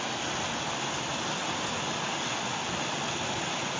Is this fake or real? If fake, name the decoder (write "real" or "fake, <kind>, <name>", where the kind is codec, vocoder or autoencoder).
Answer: real